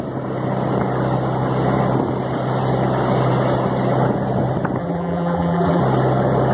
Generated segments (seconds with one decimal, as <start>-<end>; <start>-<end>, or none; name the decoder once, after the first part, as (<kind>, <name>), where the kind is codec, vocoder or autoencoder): 4.8-5.8 (vocoder, BigVGAN v2)